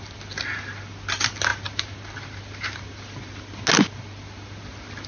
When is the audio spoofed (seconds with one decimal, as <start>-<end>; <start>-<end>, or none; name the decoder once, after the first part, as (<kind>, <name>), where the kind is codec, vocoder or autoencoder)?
none